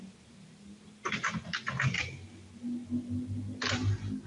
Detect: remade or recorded recorded